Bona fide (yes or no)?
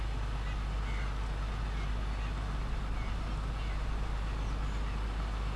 yes